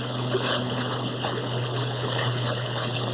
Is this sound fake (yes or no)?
yes